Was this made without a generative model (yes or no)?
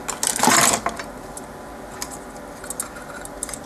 yes